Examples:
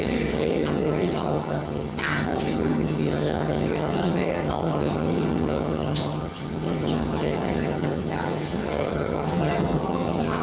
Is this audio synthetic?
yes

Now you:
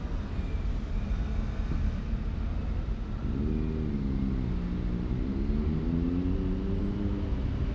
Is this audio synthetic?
no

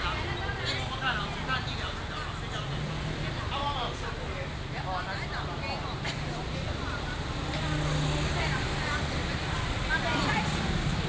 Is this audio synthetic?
no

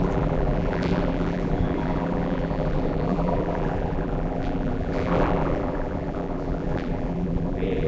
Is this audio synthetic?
yes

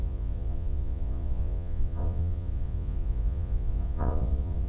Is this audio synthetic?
yes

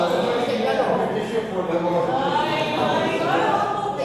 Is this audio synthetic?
no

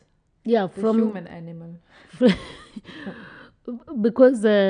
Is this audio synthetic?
no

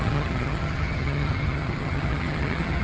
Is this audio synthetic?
yes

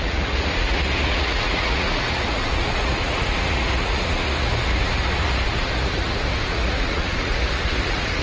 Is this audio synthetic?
yes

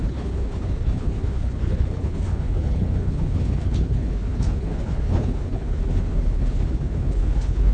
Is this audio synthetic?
yes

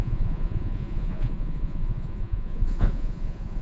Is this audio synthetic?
yes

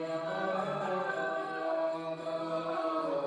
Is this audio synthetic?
yes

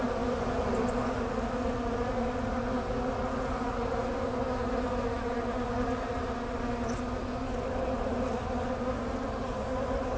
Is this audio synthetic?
no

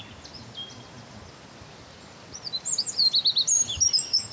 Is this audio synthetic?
no